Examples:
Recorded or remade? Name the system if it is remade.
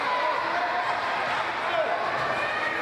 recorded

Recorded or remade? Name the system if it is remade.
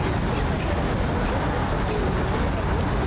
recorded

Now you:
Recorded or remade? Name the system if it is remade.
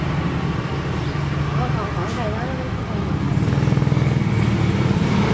recorded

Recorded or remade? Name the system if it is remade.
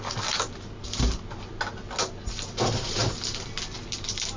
recorded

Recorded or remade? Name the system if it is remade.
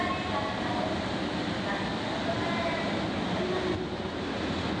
recorded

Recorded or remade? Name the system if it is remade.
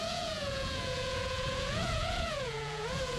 remade, vocoder, Vocos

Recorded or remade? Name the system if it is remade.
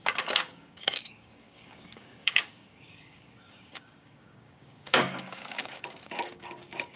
remade, codec, DAC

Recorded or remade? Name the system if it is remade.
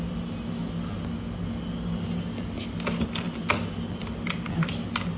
recorded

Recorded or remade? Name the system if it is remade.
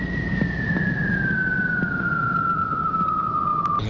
recorded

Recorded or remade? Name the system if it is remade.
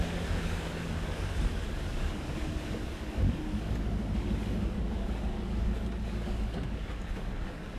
remade, codec, DAC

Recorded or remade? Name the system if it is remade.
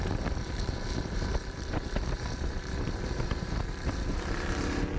remade, vocoder, BigVGAN v2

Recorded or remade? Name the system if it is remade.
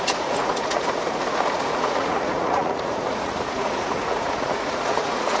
remade, vocoder, Vocos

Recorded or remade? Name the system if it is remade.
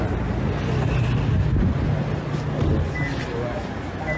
recorded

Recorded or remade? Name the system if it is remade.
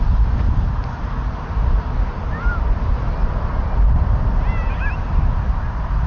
recorded